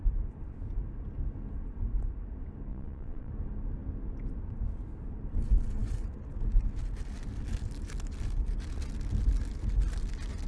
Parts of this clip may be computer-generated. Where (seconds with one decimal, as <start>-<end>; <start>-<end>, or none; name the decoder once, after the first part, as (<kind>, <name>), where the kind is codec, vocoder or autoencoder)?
2.7-3.3 (vocoder, Vocos)